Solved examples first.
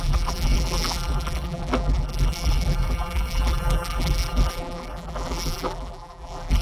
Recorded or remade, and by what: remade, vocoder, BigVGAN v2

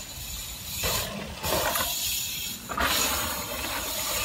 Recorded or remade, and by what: recorded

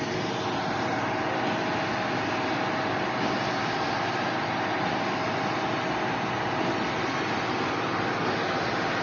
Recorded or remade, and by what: recorded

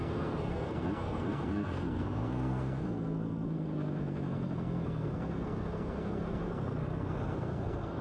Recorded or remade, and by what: remade, codec, SNAC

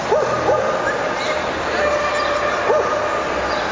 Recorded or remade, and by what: recorded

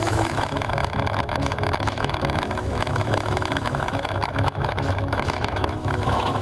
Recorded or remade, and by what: remade, autoencoder, DAC-VAE